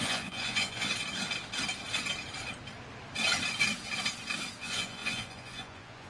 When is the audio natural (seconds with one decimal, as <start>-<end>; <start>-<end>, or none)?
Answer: 0.9-4.6